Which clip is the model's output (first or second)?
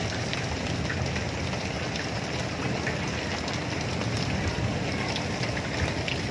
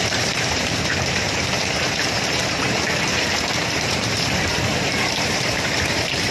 second